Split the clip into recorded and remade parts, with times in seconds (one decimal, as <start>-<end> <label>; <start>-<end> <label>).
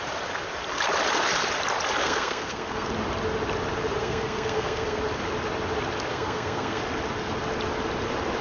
0.0-2.0 recorded; 2.0-2.9 remade; 2.9-4.0 recorded; 4.0-5.0 remade; 5.0-6.1 recorded; 6.1-6.8 remade; 6.8-8.4 recorded